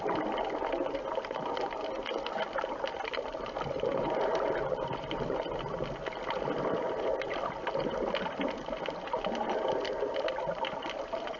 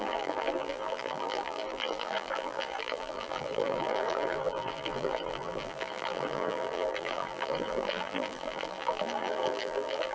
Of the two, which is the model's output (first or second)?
second